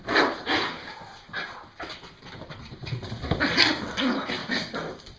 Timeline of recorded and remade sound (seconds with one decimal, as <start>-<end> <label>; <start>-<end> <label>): 0.0-3.0 recorded; 3.0-3.8 remade; 3.8-4.4 recorded; 4.4-5.2 remade